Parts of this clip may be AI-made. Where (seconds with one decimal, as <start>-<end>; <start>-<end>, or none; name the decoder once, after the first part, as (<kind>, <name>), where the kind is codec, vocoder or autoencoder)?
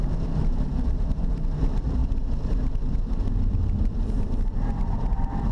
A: 0.0-2.0 (vocoder, BigVGAN v2); 3.5-5.5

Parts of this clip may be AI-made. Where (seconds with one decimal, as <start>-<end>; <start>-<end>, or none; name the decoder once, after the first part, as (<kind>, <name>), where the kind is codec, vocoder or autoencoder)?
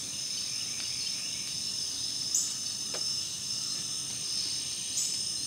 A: 2.9-4.0 (vocoder, BigVGAN v2); 4.9-5.5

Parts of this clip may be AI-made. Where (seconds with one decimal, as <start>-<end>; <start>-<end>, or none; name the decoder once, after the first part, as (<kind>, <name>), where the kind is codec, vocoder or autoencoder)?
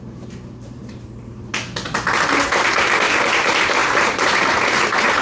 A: 0.0-1.5 (vocoder, BigVGAN v2); 3.4-5.2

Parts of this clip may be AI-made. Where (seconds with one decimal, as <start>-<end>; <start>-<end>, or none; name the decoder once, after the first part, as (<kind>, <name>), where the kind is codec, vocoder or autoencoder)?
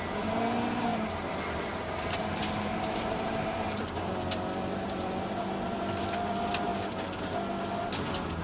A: 0.9-5.9 (vocoder, BigVGAN v2)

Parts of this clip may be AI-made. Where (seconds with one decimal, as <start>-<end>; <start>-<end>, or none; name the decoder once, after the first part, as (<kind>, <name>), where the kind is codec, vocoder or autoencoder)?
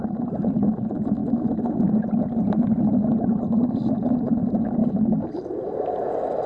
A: none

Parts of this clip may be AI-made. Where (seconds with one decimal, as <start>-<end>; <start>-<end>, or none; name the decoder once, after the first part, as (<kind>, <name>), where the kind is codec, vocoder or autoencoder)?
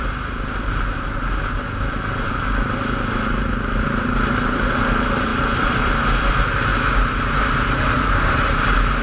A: 5.3-6.3 (vocoder, BigVGAN v2)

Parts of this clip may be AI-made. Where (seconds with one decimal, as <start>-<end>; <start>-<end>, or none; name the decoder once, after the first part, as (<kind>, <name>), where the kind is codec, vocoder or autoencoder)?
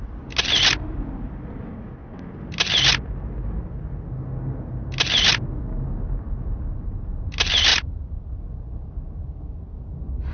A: 7.7-8.4 (vocoder, BigVGAN v2)